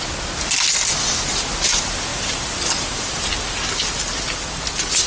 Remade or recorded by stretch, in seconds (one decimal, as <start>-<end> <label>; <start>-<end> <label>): 0.0-2.1 recorded; 2.1-3.3 remade; 3.3-5.1 recorded